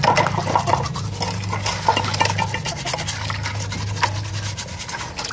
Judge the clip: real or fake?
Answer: real